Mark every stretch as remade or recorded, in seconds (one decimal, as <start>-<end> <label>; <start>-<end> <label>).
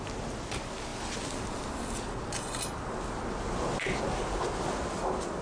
0.0-5.4 recorded